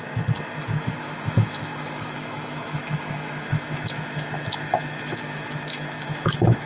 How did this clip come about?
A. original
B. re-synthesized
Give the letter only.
B